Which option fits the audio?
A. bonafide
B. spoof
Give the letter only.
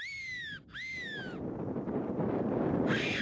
A